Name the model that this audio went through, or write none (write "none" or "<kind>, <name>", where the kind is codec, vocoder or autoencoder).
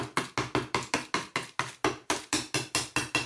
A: none